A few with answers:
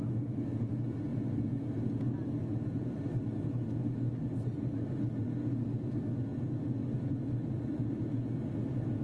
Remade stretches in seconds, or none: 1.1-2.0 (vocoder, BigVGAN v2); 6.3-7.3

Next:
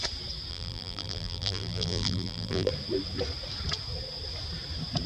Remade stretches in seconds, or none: 0.5-2.7 (vocoder, BigVGAN v2)